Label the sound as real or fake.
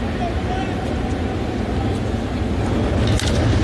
real